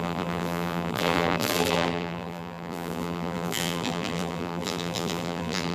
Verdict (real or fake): fake